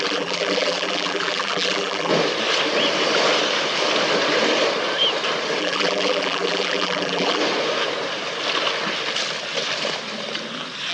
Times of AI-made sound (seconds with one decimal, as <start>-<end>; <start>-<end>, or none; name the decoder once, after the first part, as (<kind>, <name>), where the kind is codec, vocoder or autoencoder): 0.0-2.1 (vocoder, BigVGAN v2); 5.6-7.4